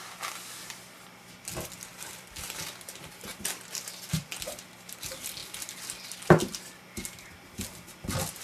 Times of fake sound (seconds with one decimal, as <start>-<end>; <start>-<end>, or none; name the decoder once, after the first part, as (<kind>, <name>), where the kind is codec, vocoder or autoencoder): 1.9-4.9 (vocoder, BigVGAN v2)